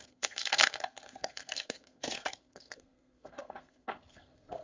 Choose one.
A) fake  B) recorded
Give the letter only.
A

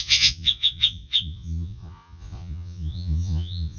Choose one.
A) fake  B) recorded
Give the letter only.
A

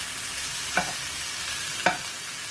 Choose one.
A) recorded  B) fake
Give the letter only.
A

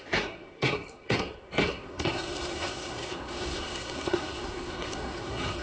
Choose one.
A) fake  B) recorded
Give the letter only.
A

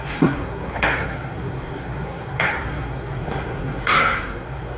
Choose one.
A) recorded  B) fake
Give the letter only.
B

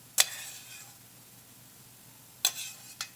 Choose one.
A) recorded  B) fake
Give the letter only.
A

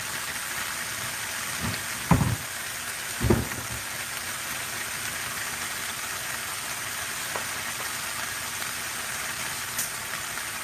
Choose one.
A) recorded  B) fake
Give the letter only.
A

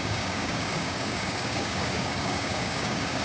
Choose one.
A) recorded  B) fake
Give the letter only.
B